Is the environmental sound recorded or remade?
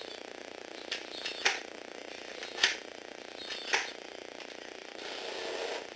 recorded